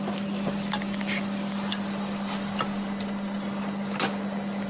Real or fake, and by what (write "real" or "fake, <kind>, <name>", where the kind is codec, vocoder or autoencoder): real